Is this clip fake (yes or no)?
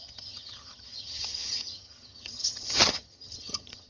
yes